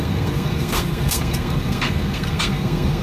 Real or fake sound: fake